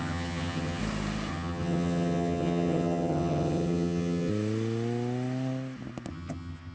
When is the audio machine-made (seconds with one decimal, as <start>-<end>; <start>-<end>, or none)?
0.0-0.8; 1.3-4.3; 6.1-6.7